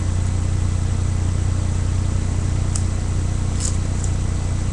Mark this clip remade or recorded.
recorded